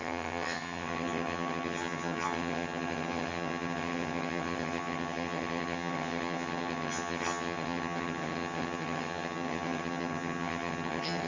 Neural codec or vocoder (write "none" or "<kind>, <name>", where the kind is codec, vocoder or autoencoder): vocoder, HiFi-GAN